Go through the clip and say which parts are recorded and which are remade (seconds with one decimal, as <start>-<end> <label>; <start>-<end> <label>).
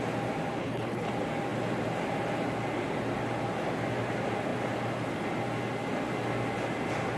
0.0-0.6 recorded; 0.6-1.1 remade; 1.1-7.2 recorded